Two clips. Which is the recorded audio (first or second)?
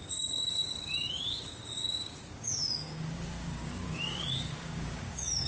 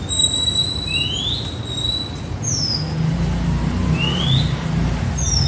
second